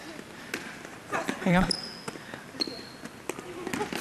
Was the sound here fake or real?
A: real